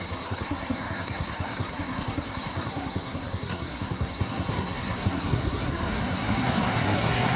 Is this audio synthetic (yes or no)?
yes